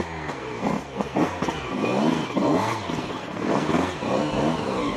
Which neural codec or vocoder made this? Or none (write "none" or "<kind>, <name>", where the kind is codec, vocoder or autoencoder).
codec, SNAC